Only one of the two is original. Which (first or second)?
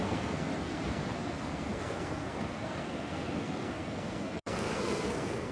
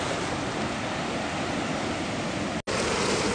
second